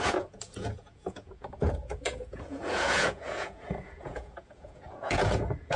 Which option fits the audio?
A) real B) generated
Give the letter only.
B